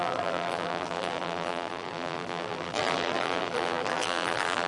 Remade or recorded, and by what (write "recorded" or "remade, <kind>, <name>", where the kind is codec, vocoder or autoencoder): remade, vocoder, BigVGAN v2